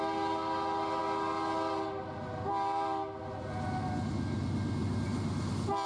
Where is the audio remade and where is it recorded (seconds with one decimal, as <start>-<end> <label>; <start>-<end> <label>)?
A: 0.0-5.9 recorded